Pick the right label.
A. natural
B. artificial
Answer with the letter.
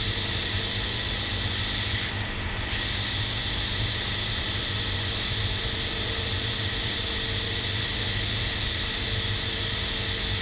A